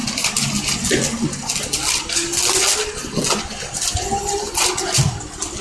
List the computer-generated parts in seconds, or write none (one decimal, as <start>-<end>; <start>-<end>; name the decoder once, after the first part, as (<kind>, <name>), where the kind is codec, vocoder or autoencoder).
none